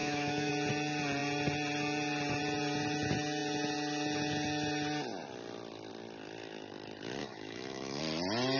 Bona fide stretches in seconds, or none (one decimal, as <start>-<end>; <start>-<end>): 0.5-7.2; 8.0-8.6